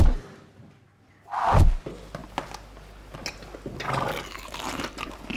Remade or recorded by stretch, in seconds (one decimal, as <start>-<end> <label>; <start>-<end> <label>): 0.0-5.4 recorded